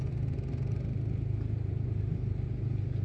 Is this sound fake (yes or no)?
no